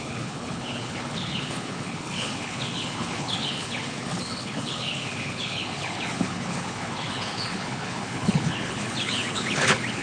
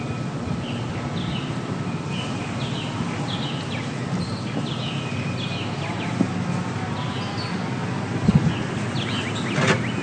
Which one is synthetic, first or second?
first